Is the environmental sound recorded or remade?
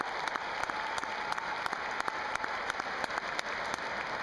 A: recorded